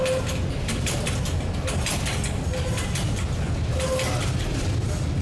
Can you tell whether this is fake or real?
real